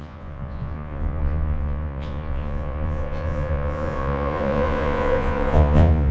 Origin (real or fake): fake